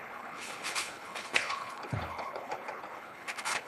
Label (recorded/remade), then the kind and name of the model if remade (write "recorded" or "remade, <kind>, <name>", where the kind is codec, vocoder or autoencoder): remade, codec, HILCodec